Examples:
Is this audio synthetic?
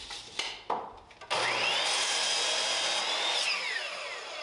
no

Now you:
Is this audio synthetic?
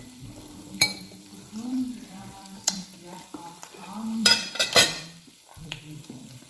yes